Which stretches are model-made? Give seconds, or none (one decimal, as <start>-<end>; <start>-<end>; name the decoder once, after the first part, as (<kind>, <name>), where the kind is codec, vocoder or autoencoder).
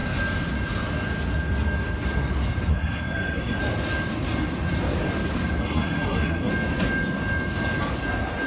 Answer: 2.7-3.6 (codec, SNAC); 5.6-6.5